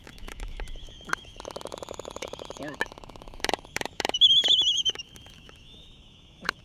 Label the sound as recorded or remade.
remade